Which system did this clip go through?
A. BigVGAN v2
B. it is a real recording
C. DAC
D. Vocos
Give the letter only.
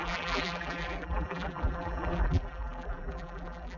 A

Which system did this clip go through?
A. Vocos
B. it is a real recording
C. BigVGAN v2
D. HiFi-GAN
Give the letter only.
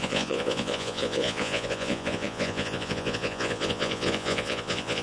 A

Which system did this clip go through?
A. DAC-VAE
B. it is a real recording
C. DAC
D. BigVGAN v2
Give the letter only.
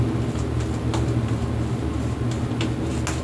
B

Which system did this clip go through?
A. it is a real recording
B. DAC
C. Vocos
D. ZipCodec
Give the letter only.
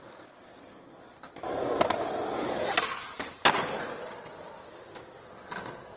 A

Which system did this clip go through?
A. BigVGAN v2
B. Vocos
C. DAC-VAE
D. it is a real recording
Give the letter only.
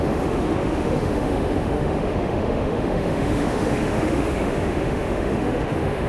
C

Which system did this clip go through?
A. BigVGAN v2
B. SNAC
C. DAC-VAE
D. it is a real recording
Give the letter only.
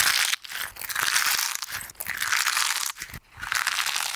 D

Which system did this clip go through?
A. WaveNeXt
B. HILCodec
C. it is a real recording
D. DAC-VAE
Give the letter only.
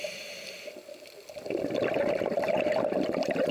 C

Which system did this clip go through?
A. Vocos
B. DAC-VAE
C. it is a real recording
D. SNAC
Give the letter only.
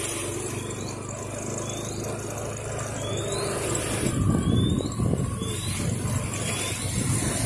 C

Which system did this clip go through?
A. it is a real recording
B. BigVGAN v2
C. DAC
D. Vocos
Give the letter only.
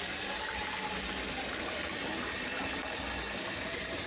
A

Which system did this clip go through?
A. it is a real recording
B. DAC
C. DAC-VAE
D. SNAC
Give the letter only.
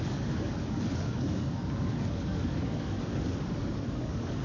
B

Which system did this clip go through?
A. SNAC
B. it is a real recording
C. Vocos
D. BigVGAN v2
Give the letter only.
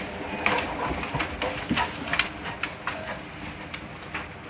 B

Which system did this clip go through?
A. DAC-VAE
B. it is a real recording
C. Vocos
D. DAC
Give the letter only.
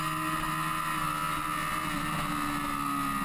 B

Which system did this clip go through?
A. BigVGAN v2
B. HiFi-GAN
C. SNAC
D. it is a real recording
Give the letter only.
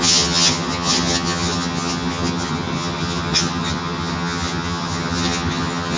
B